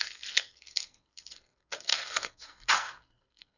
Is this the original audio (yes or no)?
no